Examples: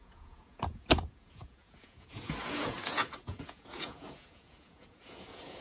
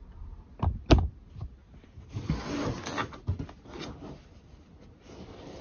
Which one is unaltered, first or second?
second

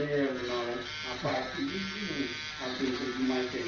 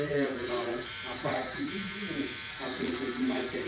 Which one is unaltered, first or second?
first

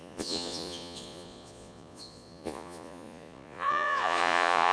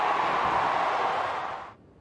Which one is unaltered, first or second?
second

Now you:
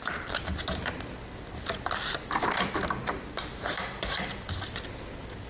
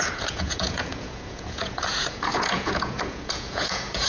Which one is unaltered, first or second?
first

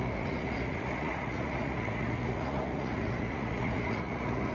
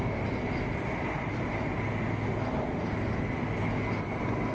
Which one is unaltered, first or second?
second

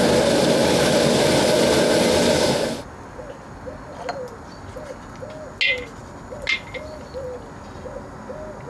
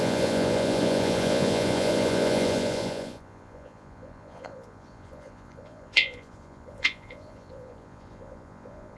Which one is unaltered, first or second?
first